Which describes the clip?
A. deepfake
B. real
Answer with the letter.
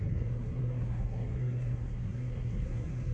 A